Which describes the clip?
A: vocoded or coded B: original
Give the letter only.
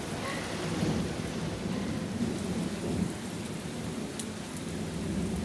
B